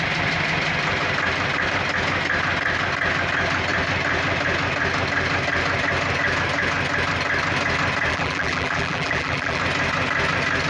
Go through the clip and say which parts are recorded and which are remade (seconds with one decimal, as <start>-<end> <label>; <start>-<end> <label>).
0.0-8.1 recorded; 8.1-9.6 remade; 9.6-10.7 recorded